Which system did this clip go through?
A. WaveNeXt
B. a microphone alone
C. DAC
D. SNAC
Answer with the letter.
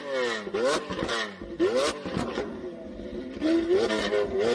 B